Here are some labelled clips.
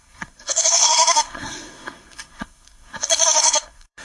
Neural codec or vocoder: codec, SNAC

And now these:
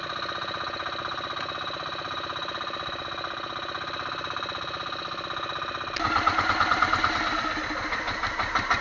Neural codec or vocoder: none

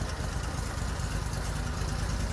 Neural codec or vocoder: none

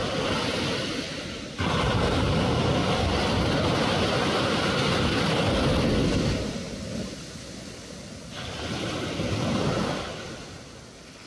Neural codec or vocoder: none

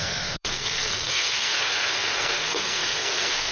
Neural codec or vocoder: codec, SNAC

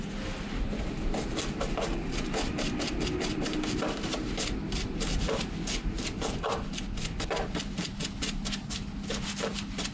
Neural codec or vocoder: none